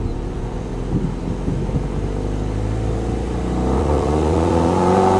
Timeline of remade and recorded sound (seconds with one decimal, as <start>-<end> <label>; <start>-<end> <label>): 0.0-0.7 remade; 0.7-3.8 recorded; 3.8-5.2 remade